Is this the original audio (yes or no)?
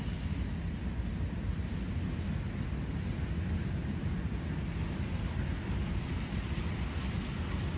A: yes